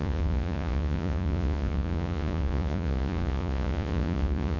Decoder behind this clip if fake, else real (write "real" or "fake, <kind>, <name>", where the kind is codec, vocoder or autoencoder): fake, vocoder, Vocos